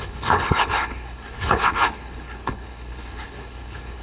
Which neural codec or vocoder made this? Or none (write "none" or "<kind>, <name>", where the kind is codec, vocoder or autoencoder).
codec, HILCodec